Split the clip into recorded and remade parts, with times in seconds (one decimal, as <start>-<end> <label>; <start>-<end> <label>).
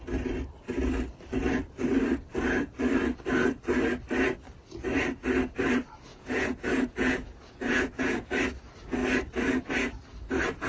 0.0-6.1 recorded; 6.1-8.3 remade; 8.3-10.7 recorded